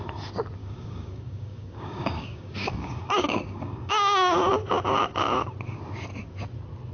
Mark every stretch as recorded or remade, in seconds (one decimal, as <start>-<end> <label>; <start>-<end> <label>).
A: 0.0-0.6 recorded; 0.6-4.5 remade; 4.5-6.9 recorded